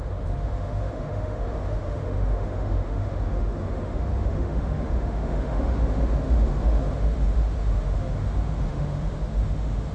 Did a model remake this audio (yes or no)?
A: yes